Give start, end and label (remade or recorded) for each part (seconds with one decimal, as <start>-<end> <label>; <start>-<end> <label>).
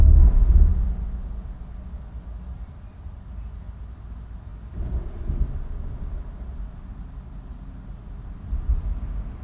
0.0-4.5 recorded; 4.5-7.2 remade; 7.2-9.4 recorded